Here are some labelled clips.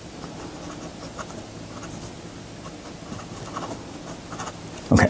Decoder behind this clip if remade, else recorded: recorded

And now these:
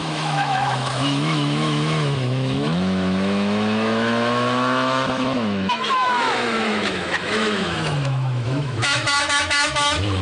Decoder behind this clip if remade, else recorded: remade, autoencoder, DAC-VAE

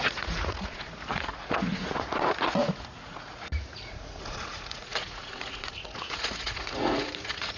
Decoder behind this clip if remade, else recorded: remade, vocoder, Vocos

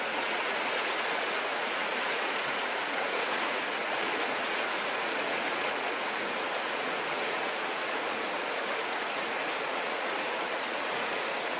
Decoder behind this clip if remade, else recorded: remade, vocoder, Vocos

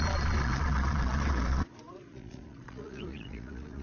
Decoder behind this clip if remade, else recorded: remade, vocoder, Vocos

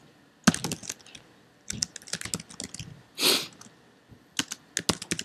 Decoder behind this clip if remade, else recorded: recorded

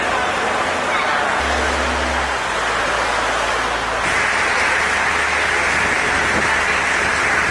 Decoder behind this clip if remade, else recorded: recorded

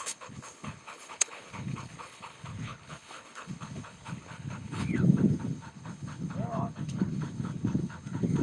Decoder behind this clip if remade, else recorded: remade, codec, HILCodec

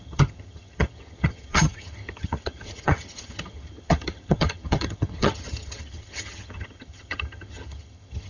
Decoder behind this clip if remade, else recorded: remade, vocoder, HiFi-GAN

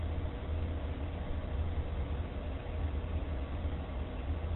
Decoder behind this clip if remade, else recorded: recorded